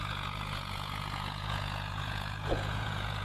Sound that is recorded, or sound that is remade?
remade